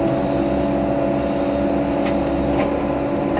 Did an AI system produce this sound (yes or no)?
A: no